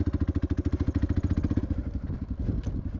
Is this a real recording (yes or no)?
yes